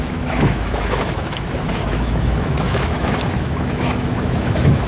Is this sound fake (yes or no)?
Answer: yes